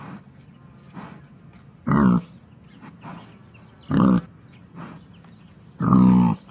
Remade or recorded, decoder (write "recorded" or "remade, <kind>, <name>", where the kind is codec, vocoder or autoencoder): recorded